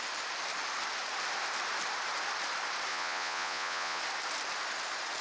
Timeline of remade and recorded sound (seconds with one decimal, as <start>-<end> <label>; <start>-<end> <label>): 0.0-2.9 recorded; 2.9-4.0 remade; 4.0-5.2 recorded